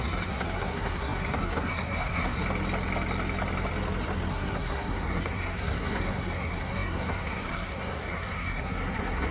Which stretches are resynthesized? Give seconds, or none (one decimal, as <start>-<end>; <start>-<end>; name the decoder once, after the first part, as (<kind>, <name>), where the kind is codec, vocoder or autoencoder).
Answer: 0.0-2.4 (codec, SNAC); 4.3-9.3